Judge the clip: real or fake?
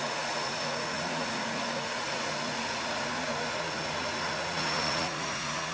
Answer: fake